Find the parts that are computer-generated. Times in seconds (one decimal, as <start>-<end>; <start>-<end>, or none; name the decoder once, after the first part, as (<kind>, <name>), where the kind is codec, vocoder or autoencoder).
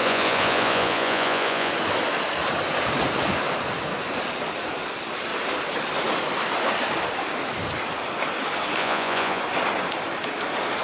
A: 0.0-1.7 (vocoder, Vocos); 8.8-9.4